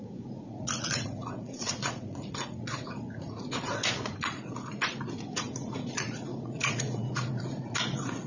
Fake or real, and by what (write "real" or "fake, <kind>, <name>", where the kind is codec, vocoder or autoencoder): fake, vocoder, Vocos